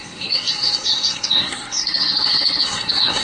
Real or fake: fake